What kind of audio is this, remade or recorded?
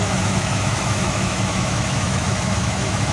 remade